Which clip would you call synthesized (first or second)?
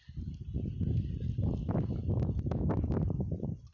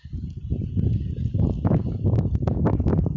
second